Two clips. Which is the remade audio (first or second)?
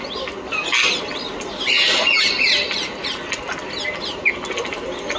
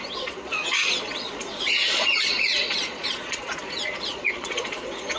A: second